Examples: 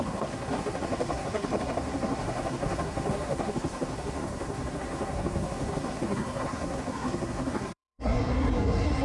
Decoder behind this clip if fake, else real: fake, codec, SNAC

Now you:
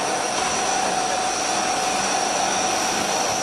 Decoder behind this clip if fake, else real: real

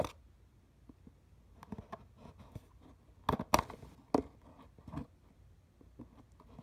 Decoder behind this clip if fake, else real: real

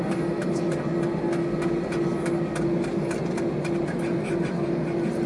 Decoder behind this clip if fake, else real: real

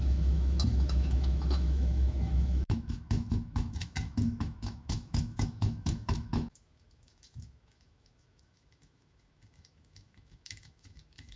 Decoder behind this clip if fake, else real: fake, autoencoder, DAC-VAE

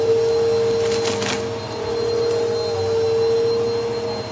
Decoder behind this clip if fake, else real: real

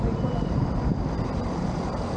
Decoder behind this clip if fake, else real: fake, vocoder, BigVGAN v2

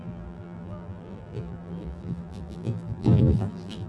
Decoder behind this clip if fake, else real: fake, vocoder, BigVGAN v2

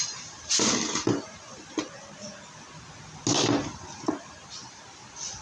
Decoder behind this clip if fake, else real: real